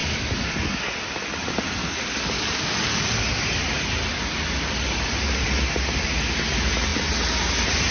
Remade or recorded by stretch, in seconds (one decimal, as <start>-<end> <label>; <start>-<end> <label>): 0.0-0.9 remade; 0.9-1.8 recorded; 1.8-2.9 remade; 2.9-7.9 recorded